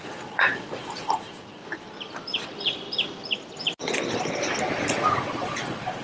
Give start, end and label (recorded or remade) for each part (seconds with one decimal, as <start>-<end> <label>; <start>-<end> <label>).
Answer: 0.0-1.6 remade; 1.6-5.2 recorded; 5.2-6.0 remade